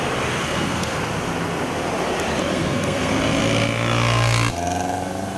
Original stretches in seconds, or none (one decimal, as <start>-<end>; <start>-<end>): 0.0-0.4; 1.0-2.5; 3.1-5.4